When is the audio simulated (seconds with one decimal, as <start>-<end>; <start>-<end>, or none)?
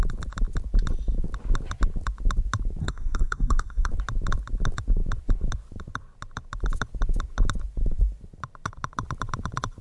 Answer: 2.8-3.9